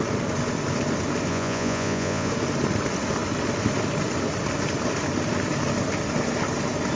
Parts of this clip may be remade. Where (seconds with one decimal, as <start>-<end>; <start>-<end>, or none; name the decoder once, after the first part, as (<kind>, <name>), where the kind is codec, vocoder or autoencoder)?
1.3-2.3 (vocoder, Vocos)